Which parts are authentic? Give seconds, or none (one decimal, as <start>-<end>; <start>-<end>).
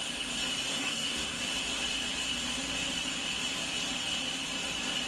0.0-0.7; 1.4-5.1